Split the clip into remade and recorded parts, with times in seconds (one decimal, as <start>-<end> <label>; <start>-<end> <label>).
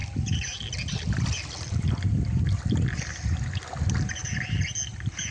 0.0-1.9 remade; 1.9-4.2 recorded; 4.2-4.7 remade; 4.7-5.3 recorded